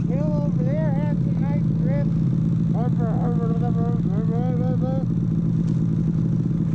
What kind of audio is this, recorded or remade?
recorded